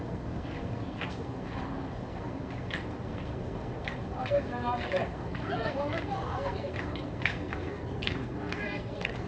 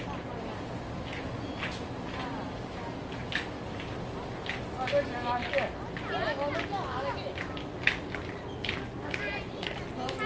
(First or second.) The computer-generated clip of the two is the first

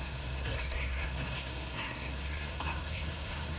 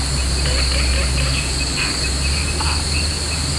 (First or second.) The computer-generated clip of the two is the first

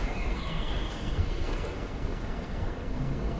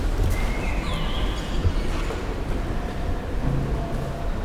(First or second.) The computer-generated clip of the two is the first